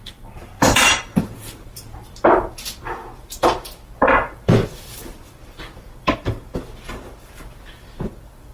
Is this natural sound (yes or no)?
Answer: no